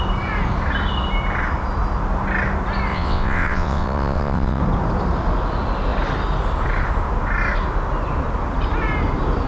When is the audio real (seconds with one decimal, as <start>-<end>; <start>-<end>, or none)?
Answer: 0.0-2.9; 4.6-9.5